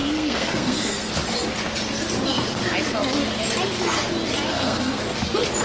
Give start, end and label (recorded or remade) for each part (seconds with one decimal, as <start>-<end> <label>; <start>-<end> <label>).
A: 0.0-1.1 remade; 1.1-4.5 recorded; 4.5-5.0 remade; 5.0-5.6 recorded